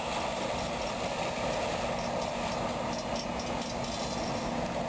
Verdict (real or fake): real